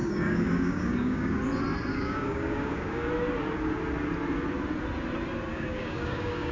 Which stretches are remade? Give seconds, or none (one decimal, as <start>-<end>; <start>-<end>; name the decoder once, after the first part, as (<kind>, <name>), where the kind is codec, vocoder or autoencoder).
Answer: 0.0-1.4 (codec, DAC); 1.9-3.1; 5.5-6.5